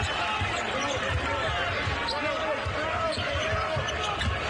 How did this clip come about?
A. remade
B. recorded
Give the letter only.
B